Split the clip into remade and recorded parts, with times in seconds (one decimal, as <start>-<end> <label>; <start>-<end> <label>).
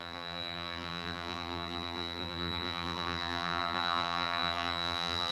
0.0-5.3 remade